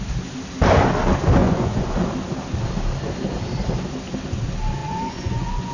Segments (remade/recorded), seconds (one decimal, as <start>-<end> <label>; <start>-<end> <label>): 0.0-1.4 recorded; 1.4-1.9 remade; 1.9-4.8 recorded; 4.8-5.7 remade